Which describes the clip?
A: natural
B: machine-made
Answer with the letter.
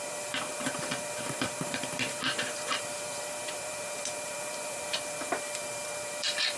B